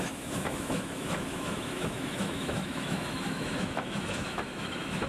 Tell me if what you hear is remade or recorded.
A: remade